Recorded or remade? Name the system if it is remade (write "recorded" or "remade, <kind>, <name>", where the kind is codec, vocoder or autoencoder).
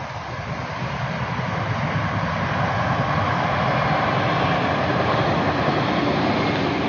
recorded